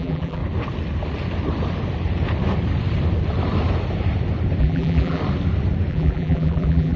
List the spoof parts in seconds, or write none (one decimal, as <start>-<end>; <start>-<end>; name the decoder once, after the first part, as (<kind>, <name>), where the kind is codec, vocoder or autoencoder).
0.0-0.4 (vocoder, BigVGAN v2); 4.6-5.2; 5.9-7.0